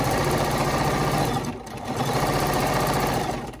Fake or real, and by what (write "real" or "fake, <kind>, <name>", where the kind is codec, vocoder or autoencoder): real